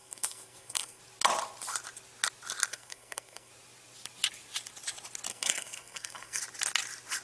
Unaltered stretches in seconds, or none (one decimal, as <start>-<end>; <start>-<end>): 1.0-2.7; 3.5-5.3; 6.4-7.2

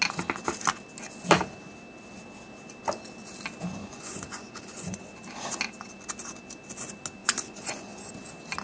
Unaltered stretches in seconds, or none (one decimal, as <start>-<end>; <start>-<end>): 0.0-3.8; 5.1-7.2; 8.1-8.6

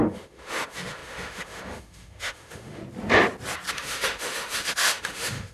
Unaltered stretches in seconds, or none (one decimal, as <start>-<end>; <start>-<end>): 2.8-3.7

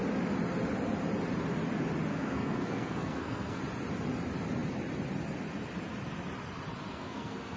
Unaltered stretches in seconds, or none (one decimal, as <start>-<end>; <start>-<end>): 0.0-2.1; 3.6-6.9

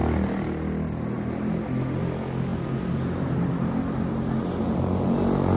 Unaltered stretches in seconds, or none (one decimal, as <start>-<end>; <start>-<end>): 0.0-5.6

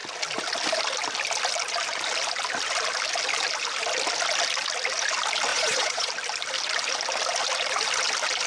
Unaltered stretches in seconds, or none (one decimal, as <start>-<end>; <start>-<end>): 0.0-5.5; 6.1-8.5

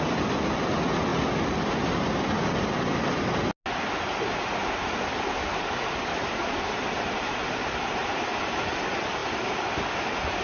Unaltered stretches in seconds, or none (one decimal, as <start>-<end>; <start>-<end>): 0.0-10.4